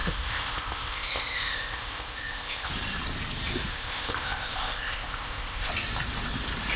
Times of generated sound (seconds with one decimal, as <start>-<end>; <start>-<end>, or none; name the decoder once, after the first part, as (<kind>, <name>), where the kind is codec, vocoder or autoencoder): 0.0-2.7 (codec, ZipCodec); 3.7-5.7